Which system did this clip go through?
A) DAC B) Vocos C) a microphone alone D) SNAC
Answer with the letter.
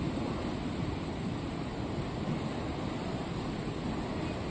C